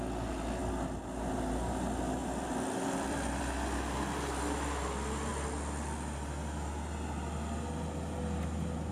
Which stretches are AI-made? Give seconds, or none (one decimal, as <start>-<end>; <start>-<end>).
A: 2.2-3.4